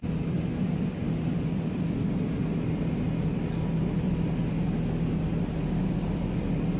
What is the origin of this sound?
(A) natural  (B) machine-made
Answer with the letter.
A